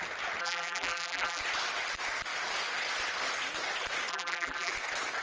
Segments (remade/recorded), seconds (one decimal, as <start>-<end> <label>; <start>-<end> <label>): 0.0-0.4 recorded; 0.4-1.4 remade; 1.4-4.1 recorded; 4.1-4.7 remade; 4.7-5.2 recorded

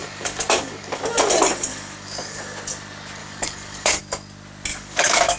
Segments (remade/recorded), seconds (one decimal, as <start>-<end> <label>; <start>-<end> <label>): 0.0-1.0 remade; 1.0-1.7 recorded; 1.7-2.4 remade; 2.4-3.2 recorded; 3.2-4.0 remade; 4.0-4.7 recorded; 4.7-5.4 remade

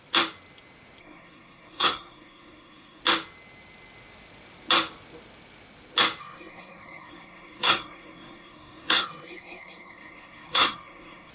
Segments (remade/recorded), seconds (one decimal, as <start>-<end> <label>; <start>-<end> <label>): 0.0-1.0 recorded; 1.0-3.0 remade; 3.0-6.2 recorded; 6.2-11.3 remade